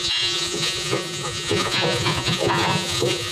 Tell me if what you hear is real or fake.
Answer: fake